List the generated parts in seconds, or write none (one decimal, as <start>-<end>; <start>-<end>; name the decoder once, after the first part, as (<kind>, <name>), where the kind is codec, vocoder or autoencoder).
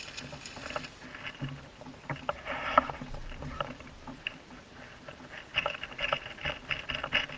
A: 1.7-4.6 (vocoder, BigVGAN v2); 5.5-6.3